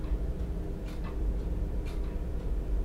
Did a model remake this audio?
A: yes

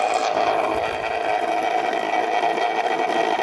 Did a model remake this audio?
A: no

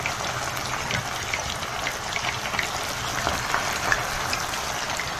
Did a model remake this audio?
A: no